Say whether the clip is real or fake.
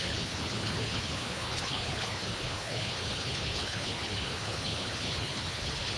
fake